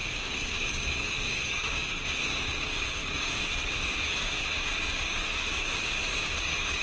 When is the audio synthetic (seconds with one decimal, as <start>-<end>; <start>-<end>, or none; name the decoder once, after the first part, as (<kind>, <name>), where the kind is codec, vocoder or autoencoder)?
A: 0.0-6.8 (codec, DAC)